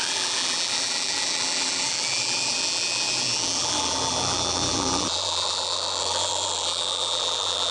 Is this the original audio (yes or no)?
no